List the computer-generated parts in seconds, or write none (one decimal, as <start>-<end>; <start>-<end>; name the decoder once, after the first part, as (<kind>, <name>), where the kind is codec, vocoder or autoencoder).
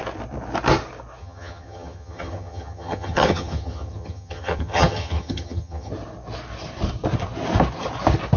1.2-5.9 (vocoder, HiFi-GAN)